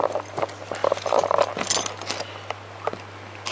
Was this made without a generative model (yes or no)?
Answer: yes